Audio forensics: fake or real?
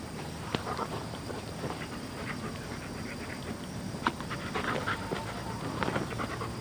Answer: real